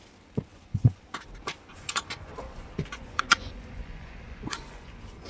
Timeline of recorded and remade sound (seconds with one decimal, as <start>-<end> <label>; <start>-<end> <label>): 0.0-0.5 recorded; 0.5-1.0 remade; 1.0-1.7 recorded; 1.7-5.3 remade